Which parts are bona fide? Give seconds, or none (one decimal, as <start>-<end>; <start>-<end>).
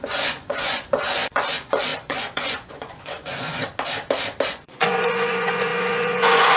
3.6-4.5